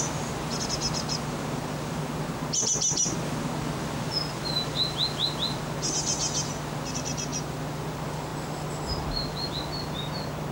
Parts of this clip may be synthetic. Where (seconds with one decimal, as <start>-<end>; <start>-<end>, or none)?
none